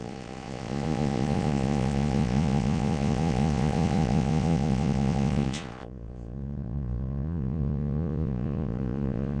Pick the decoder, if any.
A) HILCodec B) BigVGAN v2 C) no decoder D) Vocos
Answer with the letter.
D